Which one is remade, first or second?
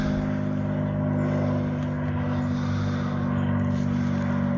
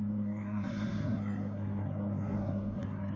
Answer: second